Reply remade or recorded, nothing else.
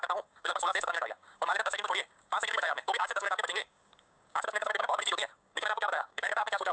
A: remade